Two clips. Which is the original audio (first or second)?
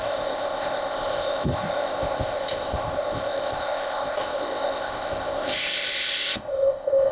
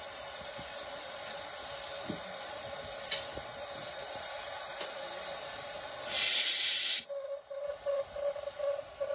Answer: second